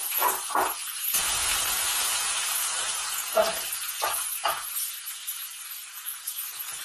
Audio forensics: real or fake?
fake